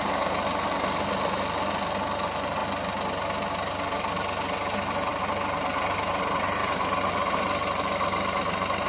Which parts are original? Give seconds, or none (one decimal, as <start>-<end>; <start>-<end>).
0.0-2.6; 3.2-5.1; 6.1-8.9